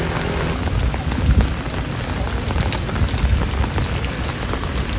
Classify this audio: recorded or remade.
recorded